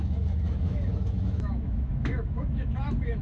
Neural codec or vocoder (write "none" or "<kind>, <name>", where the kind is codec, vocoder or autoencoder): autoencoder, DAC-VAE